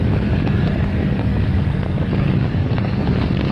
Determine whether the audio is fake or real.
fake